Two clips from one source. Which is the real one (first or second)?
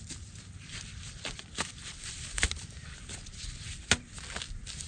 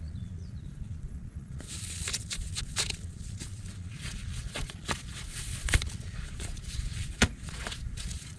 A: first